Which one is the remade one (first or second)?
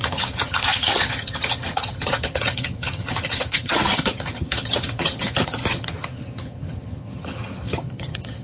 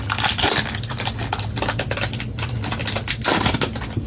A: first